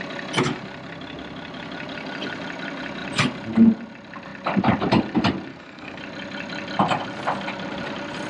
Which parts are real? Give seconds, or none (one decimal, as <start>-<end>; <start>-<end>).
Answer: 0.0-5.5; 6.0-8.3